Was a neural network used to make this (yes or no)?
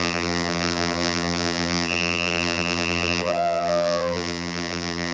yes